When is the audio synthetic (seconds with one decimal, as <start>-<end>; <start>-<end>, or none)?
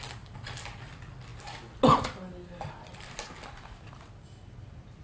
none